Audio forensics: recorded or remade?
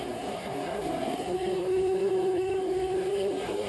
remade